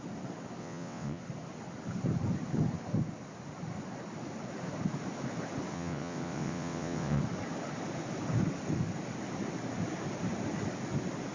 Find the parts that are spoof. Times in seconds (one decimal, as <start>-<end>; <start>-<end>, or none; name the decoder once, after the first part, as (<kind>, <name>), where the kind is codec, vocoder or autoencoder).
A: 0.6-1.2 (vocoder, WaveNeXt); 5.7-7.2

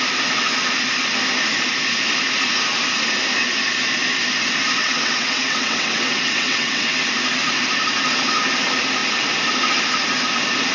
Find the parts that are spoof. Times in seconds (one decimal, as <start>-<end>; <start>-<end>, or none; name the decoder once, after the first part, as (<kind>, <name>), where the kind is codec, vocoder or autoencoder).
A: 4.8-7.1 (vocoder, WaveNeXt)